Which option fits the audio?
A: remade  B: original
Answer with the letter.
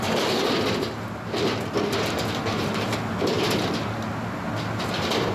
B